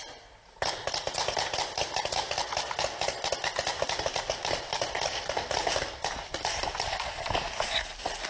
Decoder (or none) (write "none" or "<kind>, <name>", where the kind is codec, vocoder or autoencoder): none